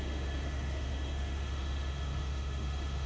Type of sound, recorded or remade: remade